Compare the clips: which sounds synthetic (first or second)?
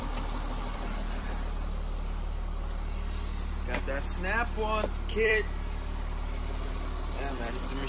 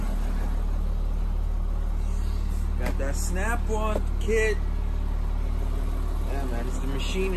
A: first